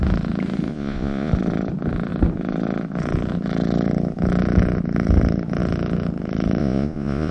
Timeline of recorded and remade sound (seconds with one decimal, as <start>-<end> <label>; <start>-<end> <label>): 0.0-0.7 recorded; 0.7-1.3 remade; 1.3-6.6 recorded; 6.6-7.3 remade